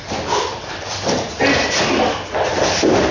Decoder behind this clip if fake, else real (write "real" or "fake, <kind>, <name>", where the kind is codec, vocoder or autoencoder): real